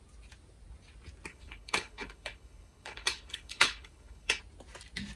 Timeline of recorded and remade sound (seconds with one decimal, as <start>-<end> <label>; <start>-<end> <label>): 0.0-1.3 recorded; 1.3-4.4 remade; 4.4-5.2 recorded